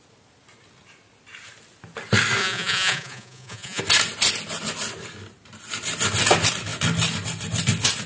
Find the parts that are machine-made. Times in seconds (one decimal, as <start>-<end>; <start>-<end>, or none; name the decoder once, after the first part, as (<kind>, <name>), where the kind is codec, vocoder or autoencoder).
2.4-3.8 (vocoder, Vocos)